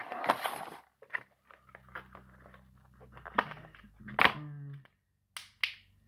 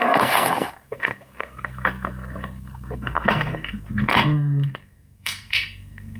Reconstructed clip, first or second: second